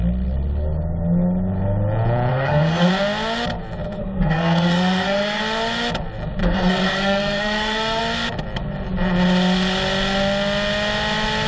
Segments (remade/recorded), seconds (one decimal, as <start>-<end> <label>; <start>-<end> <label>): 0.0-2.3 recorded; 2.3-2.9 remade; 2.9-4.0 recorded; 4.0-5.4 remade; 5.4-6.4 recorded; 6.4-8.0 remade; 8.0-11.5 recorded